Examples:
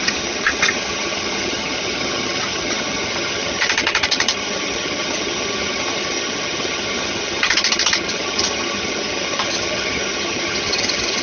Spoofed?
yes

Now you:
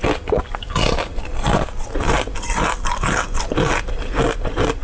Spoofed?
no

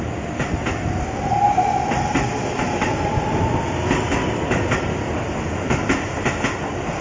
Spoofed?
no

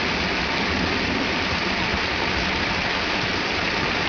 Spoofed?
no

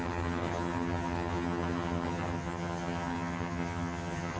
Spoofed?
yes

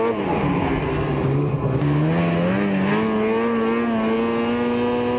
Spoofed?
no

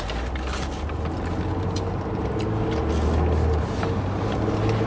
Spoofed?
no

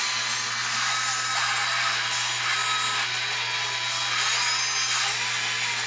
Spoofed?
no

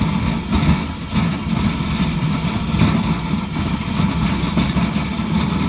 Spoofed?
no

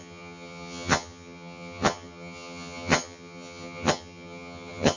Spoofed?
yes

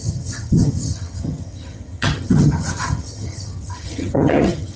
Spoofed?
yes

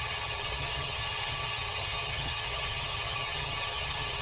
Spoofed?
yes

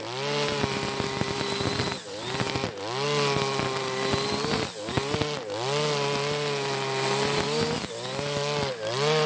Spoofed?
no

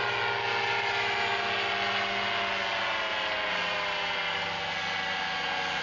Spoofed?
no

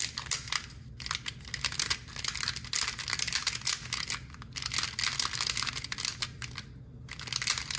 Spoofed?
no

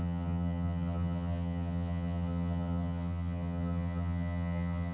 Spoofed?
yes